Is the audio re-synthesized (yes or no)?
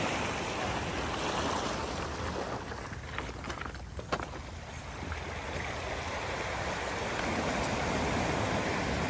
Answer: no